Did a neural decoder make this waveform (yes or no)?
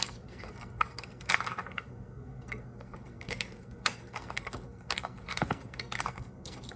yes